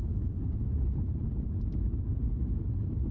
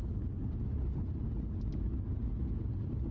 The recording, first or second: second